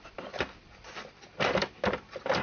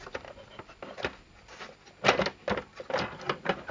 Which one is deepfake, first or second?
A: first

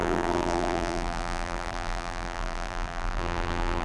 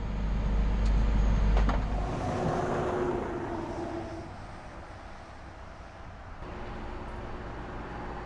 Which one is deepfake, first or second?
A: first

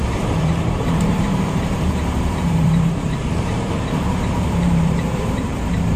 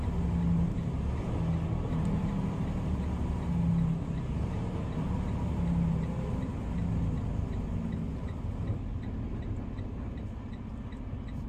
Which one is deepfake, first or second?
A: first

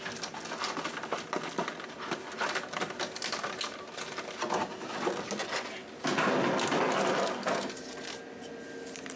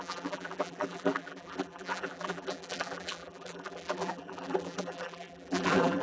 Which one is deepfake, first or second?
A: second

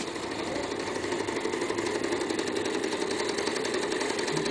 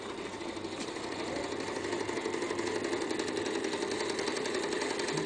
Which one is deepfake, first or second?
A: first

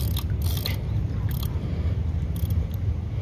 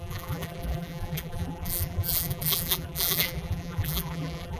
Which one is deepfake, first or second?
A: second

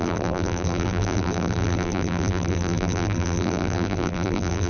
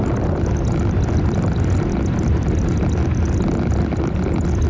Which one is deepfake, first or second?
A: first